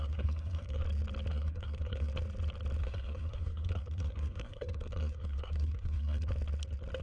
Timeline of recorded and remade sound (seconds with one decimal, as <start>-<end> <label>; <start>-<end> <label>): 0.0-0.8 remade; 0.8-1.3 recorded; 1.3-2.1 remade; 2.1-2.8 recorded; 2.8-6.3 remade; 6.3-7.0 recorded